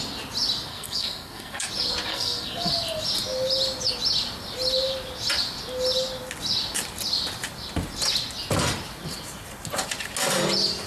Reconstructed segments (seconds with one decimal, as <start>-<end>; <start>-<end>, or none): 0.7-1.7; 2.1-2.7